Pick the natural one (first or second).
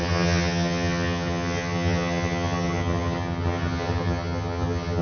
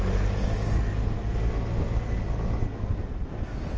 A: second